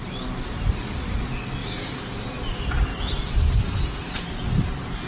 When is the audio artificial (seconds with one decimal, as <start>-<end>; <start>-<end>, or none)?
none